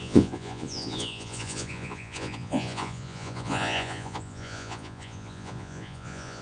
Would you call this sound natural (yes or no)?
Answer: no